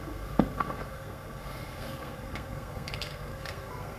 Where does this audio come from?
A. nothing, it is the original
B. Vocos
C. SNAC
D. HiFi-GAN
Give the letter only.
C